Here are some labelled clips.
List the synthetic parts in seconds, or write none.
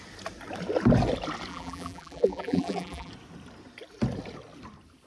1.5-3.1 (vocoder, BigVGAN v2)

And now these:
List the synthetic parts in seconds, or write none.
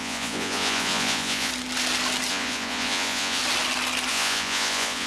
0.0-1.5 (vocoder, Vocos); 2.3-3.4; 4.1-5.1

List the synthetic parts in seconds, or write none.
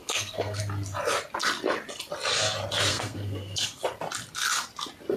0.0-0.6 (codec, SNAC); 2.9-3.8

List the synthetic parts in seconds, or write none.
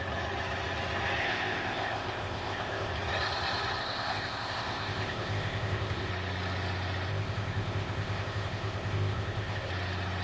1.2-2.9 (codec, ZipCodec); 3.8-6.1; 7.1-9.7